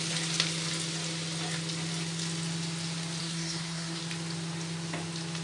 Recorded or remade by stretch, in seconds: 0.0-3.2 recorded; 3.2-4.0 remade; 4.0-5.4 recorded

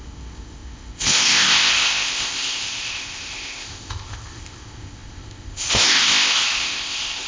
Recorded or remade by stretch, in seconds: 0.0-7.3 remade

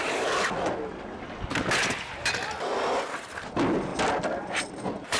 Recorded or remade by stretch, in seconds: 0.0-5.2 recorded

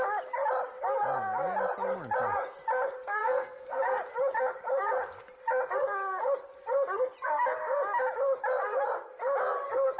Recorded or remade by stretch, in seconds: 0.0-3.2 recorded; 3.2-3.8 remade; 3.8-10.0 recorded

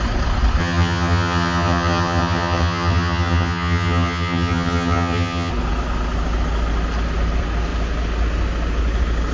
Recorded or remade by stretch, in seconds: 0.0-0.6 recorded; 0.6-5.5 remade; 5.5-9.3 recorded

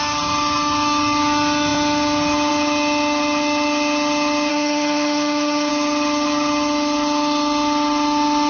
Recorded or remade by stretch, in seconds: 0.0-4.5 recorded; 4.5-5.7 remade; 5.7-8.5 recorded